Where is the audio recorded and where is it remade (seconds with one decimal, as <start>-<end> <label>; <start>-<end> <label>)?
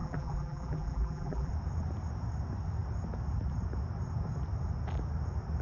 0.0-1.5 remade; 1.5-5.6 recorded